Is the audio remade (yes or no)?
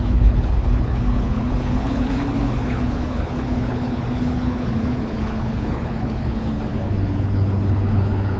yes